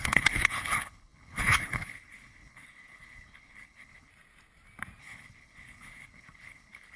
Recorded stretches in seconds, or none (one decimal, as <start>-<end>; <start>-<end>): 4.1-5.0